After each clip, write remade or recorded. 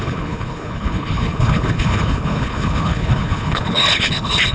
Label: remade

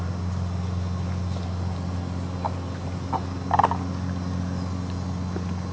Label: recorded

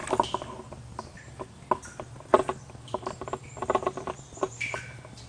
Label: recorded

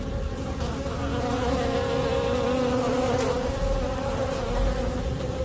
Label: recorded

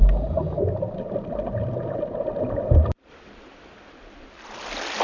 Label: recorded